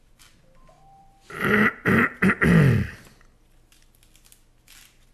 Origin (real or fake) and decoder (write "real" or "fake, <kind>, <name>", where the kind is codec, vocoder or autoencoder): real